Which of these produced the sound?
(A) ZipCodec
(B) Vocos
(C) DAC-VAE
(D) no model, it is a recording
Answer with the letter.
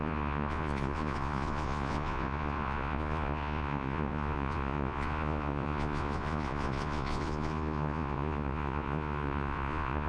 B